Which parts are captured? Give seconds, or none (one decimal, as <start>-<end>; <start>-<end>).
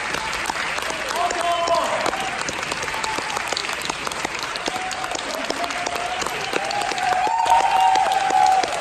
0.0-1.7; 2.6-3.6; 6.3-8.8